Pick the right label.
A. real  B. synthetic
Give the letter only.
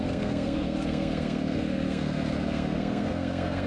B